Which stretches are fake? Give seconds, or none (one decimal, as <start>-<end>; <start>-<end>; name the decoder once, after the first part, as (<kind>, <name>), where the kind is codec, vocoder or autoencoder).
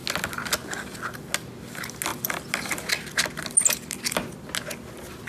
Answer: none